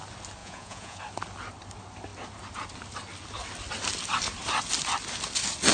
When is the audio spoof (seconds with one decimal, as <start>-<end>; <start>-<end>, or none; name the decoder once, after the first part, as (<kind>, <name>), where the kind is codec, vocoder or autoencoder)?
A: 0.4-1.0 (vocoder, Vocos)